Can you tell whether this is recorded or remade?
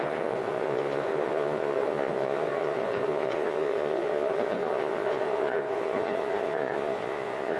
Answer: remade